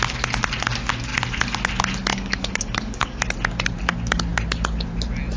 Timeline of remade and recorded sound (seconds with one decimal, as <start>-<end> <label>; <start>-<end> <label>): 0.0-2.1 recorded; 2.1-3.2 remade; 3.2-5.4 recorded